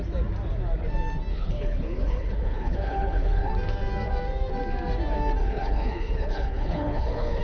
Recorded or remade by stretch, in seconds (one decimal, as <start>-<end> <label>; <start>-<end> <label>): 0.0-1.3 recorded; 1.3-3.5 remade; 3.5-5.4 recorded; 5.4-7.4 remade